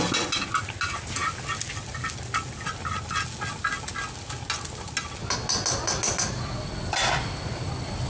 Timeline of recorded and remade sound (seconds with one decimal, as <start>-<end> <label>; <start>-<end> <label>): 0.0-8.1 recorded